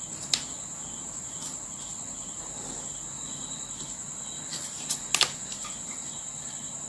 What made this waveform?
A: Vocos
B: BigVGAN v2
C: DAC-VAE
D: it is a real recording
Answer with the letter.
D